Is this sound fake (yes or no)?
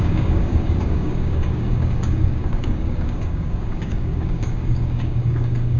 yes